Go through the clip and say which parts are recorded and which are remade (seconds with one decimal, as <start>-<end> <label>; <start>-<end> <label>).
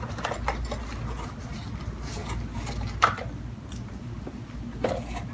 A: 0.0-5.3 recorded